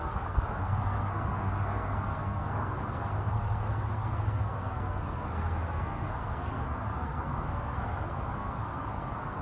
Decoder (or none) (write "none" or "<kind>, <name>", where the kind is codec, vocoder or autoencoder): codec, SNAC